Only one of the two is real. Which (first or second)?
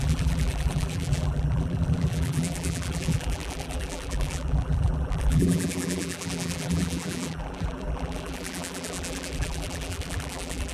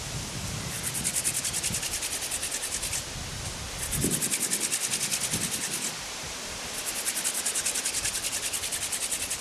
second